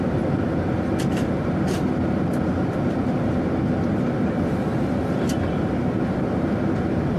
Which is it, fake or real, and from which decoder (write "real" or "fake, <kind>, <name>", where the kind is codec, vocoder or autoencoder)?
real